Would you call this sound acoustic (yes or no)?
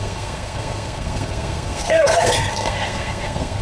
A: no